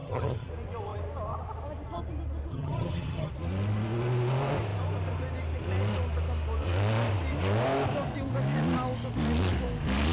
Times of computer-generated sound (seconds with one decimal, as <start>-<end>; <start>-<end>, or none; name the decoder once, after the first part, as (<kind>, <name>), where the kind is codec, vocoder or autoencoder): 0.0-0.5 (vocoder, HiFi-GAN); 2.5-3.3